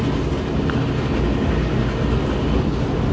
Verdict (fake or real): real